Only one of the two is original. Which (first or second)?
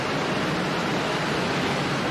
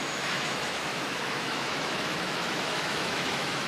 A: first